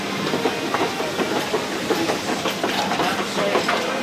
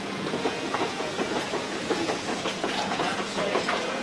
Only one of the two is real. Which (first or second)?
first